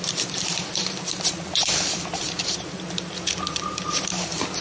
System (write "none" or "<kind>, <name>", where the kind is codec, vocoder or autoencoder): vocoder, BigVGAN v2